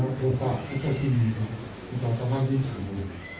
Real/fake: fake